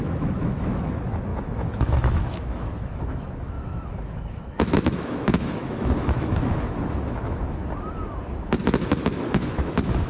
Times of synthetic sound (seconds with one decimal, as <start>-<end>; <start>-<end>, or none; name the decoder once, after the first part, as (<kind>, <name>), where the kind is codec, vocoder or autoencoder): 0.0-7.6 (autoencoder, DAC-VAE); 8.6-10.1